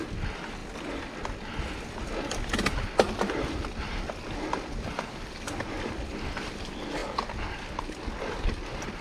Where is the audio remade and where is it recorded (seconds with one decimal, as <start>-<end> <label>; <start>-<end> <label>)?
0.0-9.0 recorded